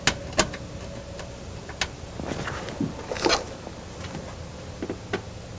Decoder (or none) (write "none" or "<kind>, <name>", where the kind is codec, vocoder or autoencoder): none